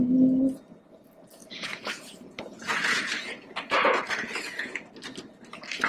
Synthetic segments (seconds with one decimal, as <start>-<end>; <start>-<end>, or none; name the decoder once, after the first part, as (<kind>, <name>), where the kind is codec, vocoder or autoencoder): 1.4-4.9 (vocoder, Vocos)